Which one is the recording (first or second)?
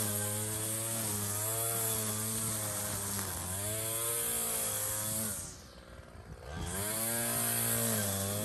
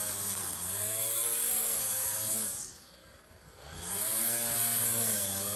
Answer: first